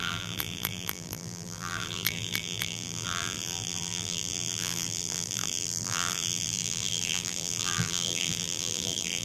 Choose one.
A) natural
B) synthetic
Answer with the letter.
B